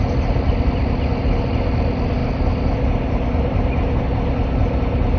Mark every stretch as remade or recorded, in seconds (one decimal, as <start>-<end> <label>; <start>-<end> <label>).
0.0-5.2 recorded